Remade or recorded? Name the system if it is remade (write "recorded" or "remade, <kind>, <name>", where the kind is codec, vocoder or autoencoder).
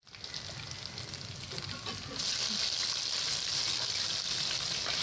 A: recorded